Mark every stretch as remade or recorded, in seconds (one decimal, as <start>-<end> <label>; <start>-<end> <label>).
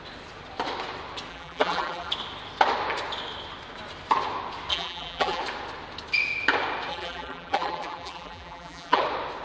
0.0-1.3 recorded; 1.3-2.1 remade; 2.1-4.7 recorded; 4.7-5.4 remade; 5.4-6.9 recorded; 6.9-9.0 remade; 9.0-9.4 recorded